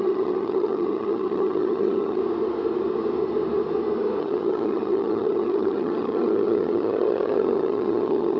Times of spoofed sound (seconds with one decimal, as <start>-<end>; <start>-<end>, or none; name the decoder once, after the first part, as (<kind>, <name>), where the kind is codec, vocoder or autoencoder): 0.0-2.2 (vocoder, HiFi-GAN); 4.2-8.4

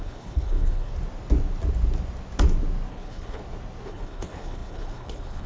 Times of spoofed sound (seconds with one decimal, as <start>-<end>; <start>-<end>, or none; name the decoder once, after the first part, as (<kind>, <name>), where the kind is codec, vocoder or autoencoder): 0.0-0.9 (codec, HILCodec); 2.9-3.4; 3.9-5.5